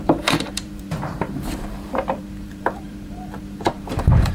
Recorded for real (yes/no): no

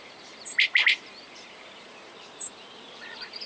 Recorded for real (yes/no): no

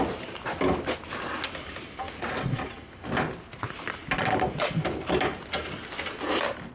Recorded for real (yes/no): yes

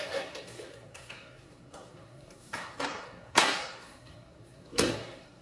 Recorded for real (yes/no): no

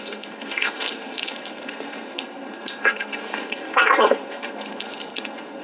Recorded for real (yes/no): no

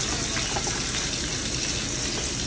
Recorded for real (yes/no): yes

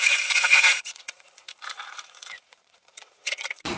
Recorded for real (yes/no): no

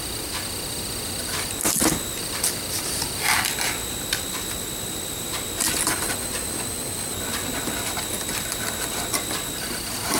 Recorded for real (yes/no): yes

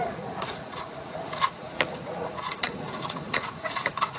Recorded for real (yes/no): no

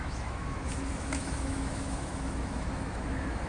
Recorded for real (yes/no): no